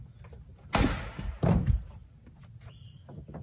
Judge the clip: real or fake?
real